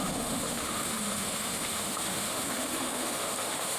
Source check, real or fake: fake